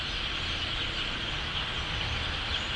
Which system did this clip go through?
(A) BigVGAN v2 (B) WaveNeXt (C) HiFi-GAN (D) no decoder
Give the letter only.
D